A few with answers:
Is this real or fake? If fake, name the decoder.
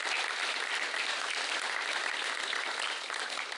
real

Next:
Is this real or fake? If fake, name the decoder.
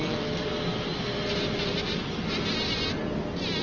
real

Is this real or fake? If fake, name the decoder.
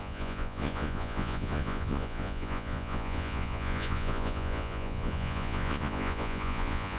fake, vocoder, Vocos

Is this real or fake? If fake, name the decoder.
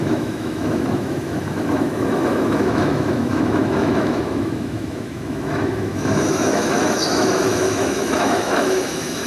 fake, autoencoder, DAC-VAE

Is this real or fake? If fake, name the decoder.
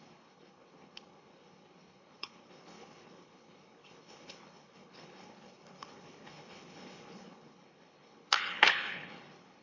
fake, codec, HILCodec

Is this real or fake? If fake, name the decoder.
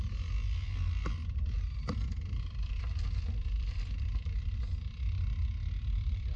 real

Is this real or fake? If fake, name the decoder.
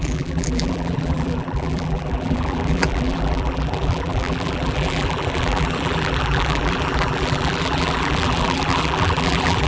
fake, vocoder, BigVGAN v2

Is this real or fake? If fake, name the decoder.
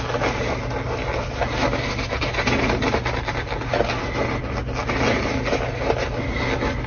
real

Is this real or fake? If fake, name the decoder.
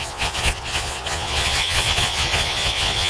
fake, vocoder, Vocos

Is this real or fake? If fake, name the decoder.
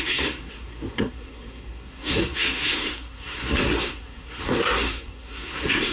fake, codec, SNAC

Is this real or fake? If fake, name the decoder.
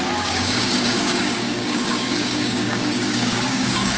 fake, codec, DAC